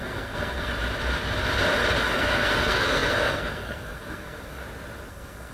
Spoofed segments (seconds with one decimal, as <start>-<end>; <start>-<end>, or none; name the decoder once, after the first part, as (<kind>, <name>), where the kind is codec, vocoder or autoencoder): 0.0-0.7 (codec, SNAC); 2.1-4.6; 5.1-5.5